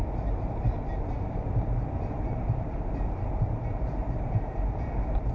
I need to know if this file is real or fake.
fake